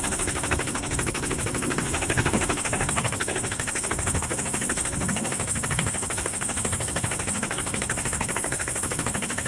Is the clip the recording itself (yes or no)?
no